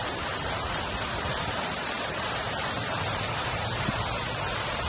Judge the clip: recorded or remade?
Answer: remade